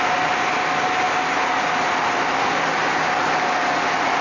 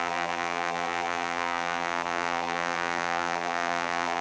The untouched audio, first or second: first